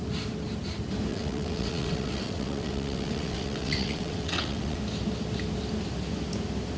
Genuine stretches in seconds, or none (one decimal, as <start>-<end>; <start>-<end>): 0.0-1.1; 4.8-6.8